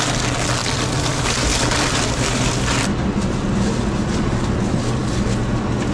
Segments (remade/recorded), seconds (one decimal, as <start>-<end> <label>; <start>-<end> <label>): 0.0-0.6 recorded; 0.6-4.1 remade; 4.1-5.9 recorded